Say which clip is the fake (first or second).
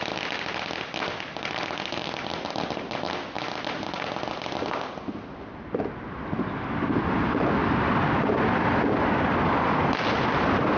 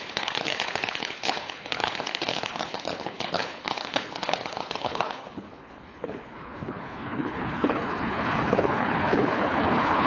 second